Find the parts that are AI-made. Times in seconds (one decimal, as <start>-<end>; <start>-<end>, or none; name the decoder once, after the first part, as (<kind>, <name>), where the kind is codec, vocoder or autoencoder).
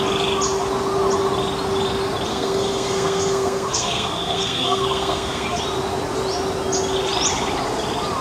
2.3-5.6 (codec, SNAC)